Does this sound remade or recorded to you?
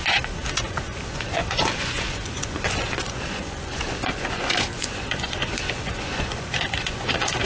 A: remade